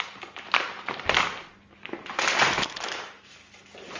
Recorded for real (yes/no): yes